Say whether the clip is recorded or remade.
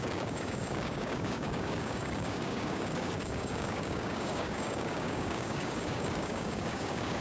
remade